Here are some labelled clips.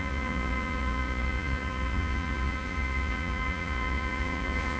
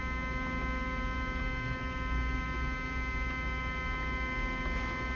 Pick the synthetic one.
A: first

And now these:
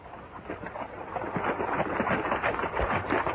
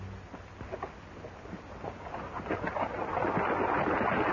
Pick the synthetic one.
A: first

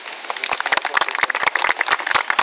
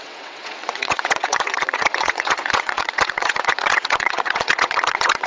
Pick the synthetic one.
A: second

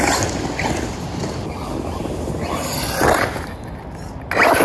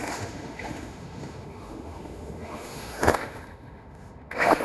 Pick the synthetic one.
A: second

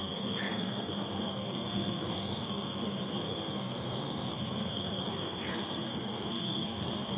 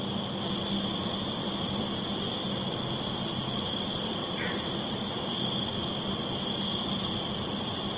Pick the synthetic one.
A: first